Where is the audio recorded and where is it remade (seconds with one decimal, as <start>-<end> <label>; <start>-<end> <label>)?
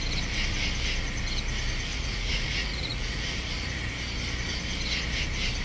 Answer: 0.0-1.9 recorded; 1.9-3.2 remade; 3.2-5.6 recorded